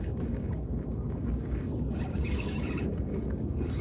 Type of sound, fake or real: fake